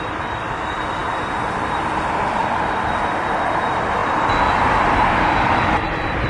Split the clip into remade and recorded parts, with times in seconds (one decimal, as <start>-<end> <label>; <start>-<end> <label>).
0.0-6.3 remade